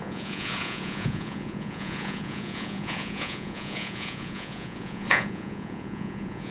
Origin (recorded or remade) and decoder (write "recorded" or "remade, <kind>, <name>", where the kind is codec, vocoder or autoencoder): remade, vocoder, Vocos